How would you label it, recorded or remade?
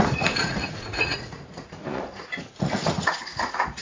remade